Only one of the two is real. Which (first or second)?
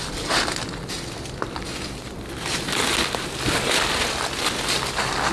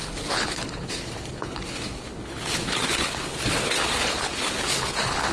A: first